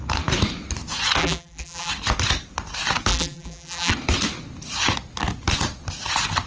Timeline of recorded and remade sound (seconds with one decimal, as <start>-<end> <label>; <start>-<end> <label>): 0.0-1.2 recorded; 1.2-1.9 remade; 1.9-3.1 recorded; 3.1-3.9 remade; 3.9-6.5 recorded